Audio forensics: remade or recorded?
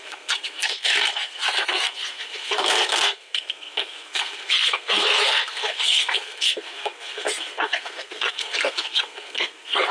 remade